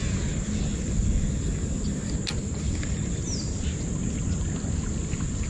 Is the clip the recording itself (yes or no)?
yes